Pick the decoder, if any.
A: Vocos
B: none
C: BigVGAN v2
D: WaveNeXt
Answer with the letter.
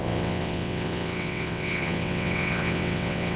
D